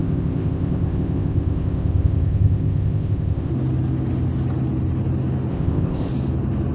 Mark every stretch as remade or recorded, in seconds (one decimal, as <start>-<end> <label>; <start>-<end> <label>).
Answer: 0.0-3.5 remade; 3.5-5.5 recorded; 5.5-6.1 remade; 6.1-6.7 recorded